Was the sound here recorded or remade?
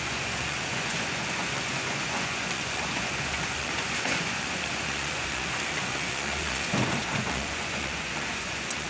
remade